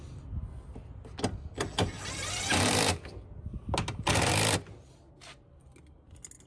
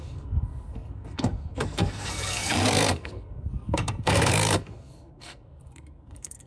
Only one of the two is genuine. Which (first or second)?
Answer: first